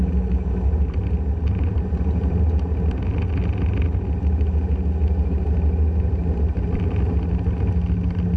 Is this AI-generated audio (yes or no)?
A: no